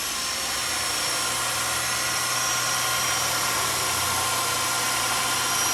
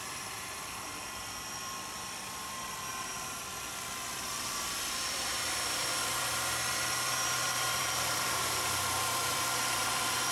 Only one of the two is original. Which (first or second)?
first